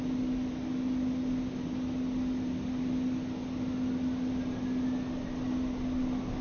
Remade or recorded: recorded